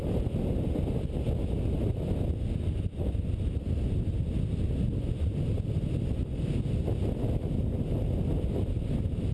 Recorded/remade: recorded